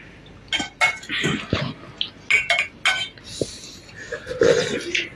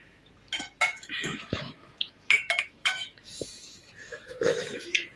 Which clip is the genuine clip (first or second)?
first